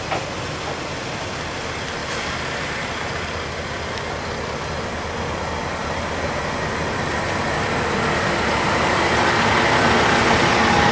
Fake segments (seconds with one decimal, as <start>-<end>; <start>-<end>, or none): none